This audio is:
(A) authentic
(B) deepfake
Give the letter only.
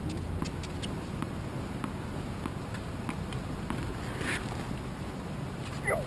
A